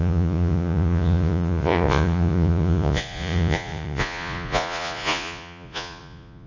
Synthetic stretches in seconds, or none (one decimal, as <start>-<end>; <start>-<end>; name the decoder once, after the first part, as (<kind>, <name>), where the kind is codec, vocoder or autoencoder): 0.0-6.5 (vocoder, Vocos)